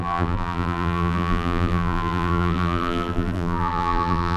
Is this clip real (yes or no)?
no